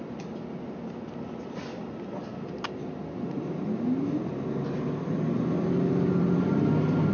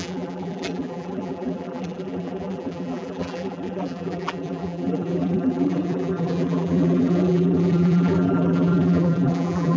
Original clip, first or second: first